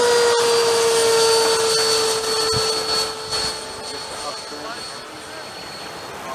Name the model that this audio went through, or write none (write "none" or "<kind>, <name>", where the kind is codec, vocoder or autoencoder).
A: none